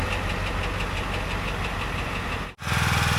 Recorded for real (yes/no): yes